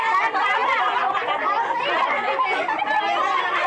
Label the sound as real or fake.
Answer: real